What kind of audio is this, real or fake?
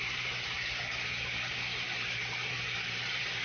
fake